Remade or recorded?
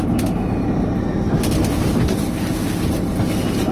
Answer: recorded